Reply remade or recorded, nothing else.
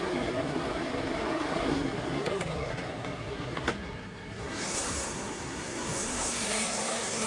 remade